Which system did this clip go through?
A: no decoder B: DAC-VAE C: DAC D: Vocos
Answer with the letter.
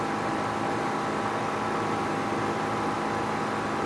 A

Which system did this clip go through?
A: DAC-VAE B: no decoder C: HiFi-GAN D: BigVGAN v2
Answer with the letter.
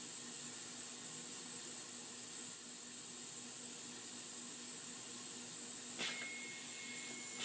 B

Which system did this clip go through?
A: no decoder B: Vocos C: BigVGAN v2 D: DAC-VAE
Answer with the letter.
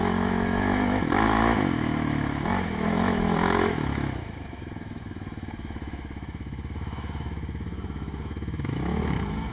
D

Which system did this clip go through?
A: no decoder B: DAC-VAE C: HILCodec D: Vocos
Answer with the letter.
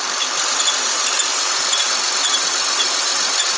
A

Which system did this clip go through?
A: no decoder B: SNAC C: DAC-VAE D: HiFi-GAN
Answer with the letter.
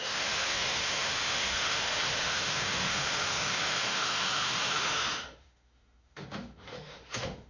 C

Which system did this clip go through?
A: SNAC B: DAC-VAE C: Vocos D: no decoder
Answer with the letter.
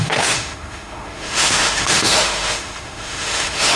B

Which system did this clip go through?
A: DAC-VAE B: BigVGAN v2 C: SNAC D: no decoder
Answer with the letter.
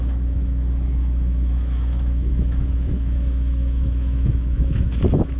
A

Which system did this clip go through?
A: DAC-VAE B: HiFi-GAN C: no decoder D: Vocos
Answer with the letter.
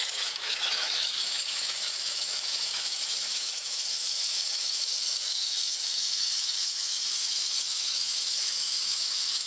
A